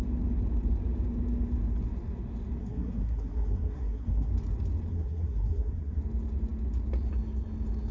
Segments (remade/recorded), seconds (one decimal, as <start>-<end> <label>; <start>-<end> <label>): 0.0-2.6 recorded; 2.6-4.3 remade; 4.3-4.9 recorded; 4.9-6.0 remade; 6.0-7.9 recorded